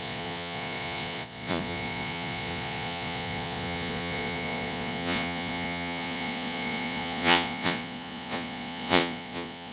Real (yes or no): no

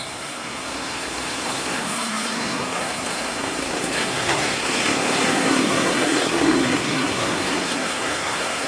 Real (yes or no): no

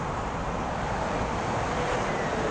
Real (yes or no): no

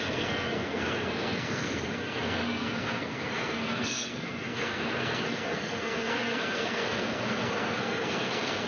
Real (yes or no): no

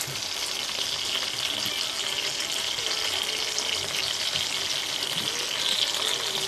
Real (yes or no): yes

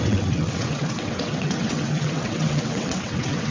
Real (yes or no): no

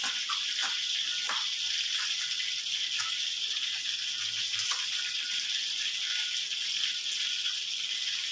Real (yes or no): yes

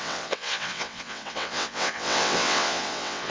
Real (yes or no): no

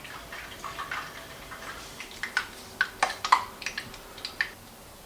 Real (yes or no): yes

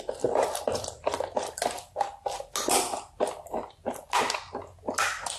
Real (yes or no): yes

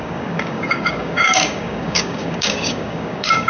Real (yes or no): no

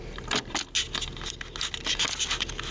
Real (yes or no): yes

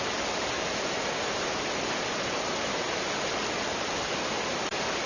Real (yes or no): yes